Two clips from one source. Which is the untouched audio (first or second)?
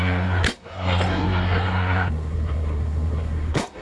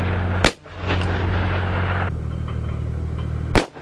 second